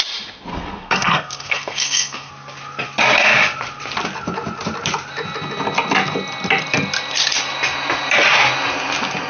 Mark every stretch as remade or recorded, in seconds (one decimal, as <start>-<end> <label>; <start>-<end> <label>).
0.0-0.5 recorded; 0.5-2.3 remade; 2.3-9.3 recorded

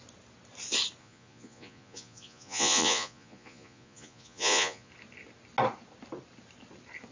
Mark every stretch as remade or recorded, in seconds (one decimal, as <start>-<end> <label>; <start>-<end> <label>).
0.0-1.0 recorded; 1.0-4.9 remade; 4.9-7.1 recorded

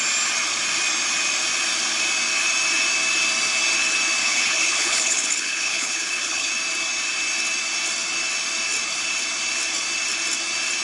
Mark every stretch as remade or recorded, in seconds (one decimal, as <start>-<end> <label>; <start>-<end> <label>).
0.0-4.2 recorded; 4.2-6.5 remade; 6.5-10.8 recorded